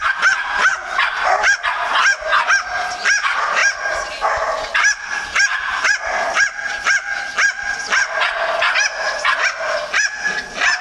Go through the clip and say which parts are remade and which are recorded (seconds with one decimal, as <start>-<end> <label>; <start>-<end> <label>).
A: 0.0-10.8 recorded